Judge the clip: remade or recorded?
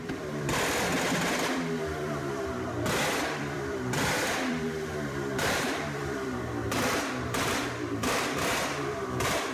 remade